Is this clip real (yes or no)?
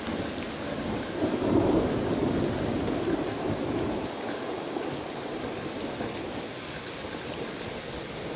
yes